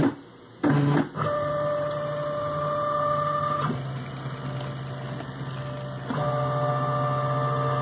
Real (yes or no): yes